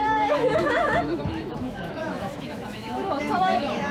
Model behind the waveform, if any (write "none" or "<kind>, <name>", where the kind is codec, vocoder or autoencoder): autoencoder, DAC-VAE